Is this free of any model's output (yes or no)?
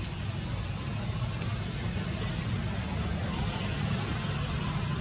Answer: yes